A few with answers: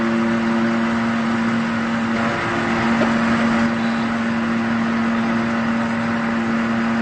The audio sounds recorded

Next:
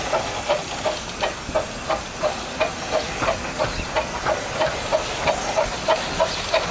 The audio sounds recorded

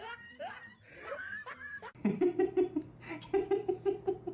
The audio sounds remade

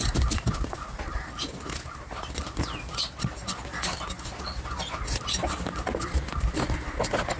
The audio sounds recorded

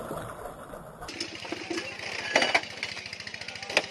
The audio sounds recorded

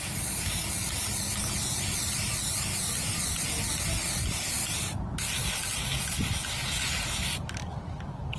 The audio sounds recorded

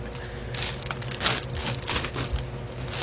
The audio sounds recorded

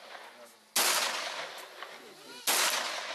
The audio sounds recorded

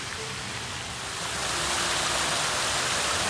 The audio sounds recorded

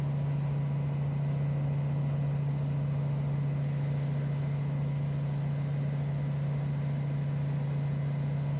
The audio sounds recorded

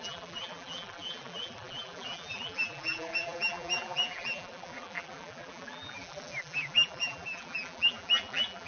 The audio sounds remade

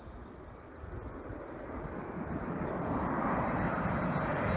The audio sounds recorded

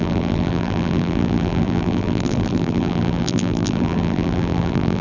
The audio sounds remade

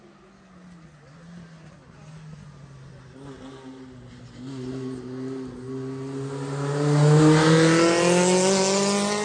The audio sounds recorded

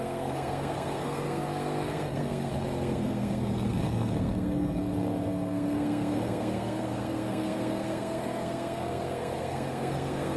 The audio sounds remade